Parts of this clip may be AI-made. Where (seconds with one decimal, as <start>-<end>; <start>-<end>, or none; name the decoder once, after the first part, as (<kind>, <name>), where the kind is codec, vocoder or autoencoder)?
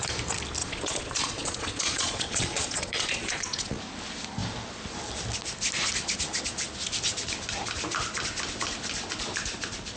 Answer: 0.6-3.8 (vocoder, Vocos)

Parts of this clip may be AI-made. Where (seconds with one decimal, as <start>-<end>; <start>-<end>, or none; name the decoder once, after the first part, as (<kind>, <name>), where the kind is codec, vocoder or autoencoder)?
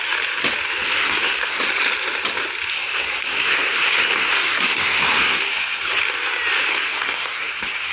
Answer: 1.0-1.6 (codec, SNAC); 2.7-6.0; 6.7-7.9